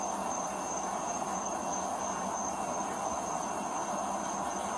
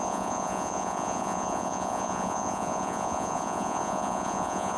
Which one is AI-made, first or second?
second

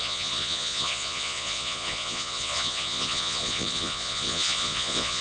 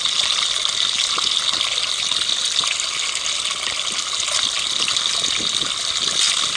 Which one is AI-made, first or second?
first